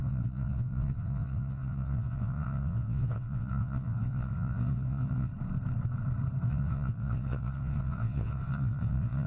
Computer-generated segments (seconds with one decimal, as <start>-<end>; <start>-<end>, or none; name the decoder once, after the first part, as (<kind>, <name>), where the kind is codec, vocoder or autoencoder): 0.0-5.3 (vocoder, WaveNeXt); 6.5-9.3